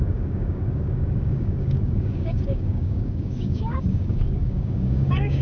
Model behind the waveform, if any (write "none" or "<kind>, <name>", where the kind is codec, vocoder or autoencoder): codec, DAC